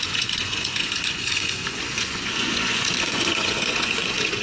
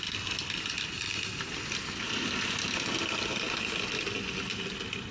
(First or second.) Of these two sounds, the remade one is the first